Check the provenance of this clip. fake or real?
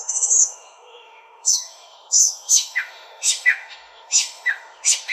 fake